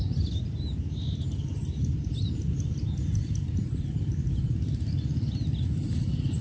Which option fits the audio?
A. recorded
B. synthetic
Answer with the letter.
A